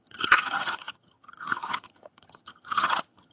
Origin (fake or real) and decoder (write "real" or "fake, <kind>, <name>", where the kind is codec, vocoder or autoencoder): fake, vocoder, HiFi-GAN